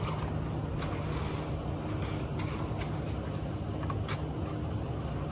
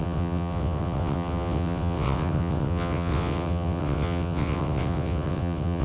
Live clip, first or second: first